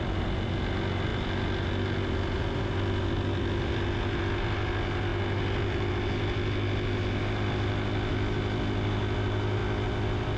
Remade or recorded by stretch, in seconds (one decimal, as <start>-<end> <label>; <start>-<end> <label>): 0.0-10.4 recorded